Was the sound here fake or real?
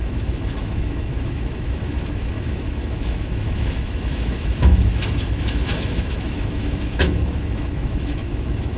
fake